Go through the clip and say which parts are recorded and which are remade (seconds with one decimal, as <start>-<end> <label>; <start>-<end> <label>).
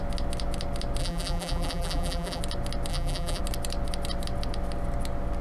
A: 0.0-1.0 recorded; 1.0-2.4 remade; 2.4-2.9 recorded; 2.9-3.4 remade; 3.4-5.4 recorded